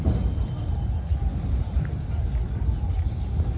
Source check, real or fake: real